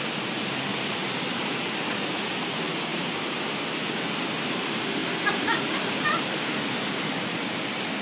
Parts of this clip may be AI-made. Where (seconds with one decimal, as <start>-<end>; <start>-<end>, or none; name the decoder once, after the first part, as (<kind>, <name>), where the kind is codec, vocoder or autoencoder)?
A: 1.0-2.2 (vocoder, BigVGAN v2); 2.9-4.5; 5.0-6.4